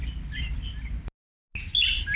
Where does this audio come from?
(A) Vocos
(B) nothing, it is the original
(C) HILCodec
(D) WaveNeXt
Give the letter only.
B